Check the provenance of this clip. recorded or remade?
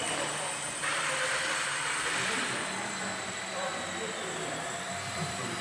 remade